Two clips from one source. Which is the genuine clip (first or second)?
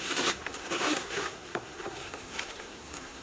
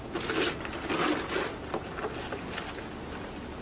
second